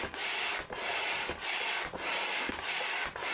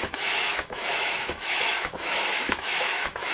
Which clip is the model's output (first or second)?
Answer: second